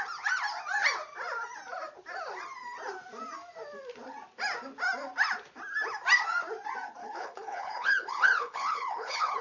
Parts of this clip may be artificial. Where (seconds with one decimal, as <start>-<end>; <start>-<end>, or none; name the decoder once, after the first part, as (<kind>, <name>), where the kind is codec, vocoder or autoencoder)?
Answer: 7.0-9.4 (codec, HILCodec)